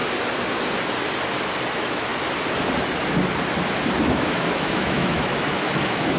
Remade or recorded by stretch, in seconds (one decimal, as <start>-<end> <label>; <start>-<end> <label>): 0.0-1.7 recorded; 1.7-2.1 remade; 2.1-4.0 recorded; 4.0-6.2 remade